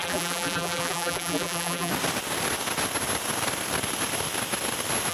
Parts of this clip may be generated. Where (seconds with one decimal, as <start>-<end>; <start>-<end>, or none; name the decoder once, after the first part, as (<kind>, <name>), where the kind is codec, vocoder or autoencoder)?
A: 0.0-1.9 (vocoder, BigVGAN v2)